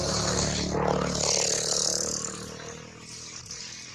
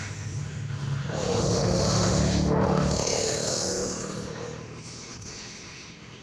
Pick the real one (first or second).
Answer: first